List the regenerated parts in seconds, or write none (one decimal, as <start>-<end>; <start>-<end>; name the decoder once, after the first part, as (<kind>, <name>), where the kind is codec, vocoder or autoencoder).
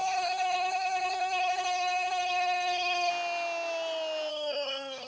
0.0-3.1 (codec, SNAC); 4.3-5.1